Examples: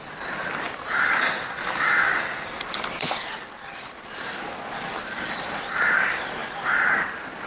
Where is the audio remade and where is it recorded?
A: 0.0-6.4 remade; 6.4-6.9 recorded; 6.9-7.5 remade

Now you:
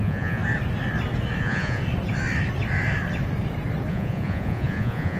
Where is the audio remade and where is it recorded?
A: 0.0-0.4 remade; 0.4-1.4 recorded; 1.4-1.8 remade; 1.8-3.9 recorded; 3.9-5.2 remade